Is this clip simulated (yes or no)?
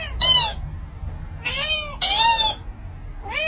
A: no